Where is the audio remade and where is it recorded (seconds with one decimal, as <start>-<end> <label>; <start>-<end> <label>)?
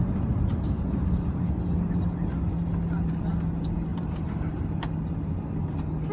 0.0-0.5 recorded; 0.5-1.4 remade; 1.4-3.9 recorded; 3.9-4.5 remade; 4.5-6.1 recorded